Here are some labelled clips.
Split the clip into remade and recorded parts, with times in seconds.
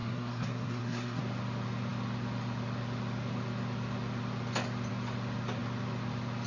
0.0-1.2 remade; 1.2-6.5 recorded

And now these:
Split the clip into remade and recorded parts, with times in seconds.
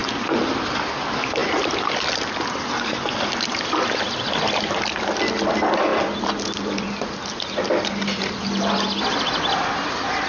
0.0-10.3 recorded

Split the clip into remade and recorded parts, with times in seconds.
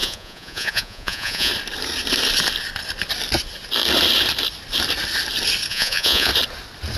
0.0-1.5 remade; 1.5-5.7 recorded; 5.7-6.3 remade; 6.3-7.0 recorded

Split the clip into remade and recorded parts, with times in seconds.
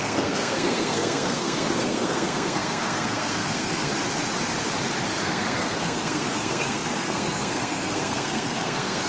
0.0-3.9 remade; 3.9-5.2 recorded; 5.2-9.1 remade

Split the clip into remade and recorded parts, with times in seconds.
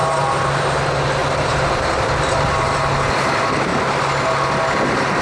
0.0-0.6 remade; 0.6-1.2 recorded; 1.2-2.8 remade; 2.8-5.2 recorded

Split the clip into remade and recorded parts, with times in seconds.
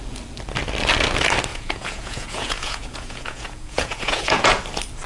0.0-1.5 recorded; 1.5-4.6 remade; 4.6-5.1 recorded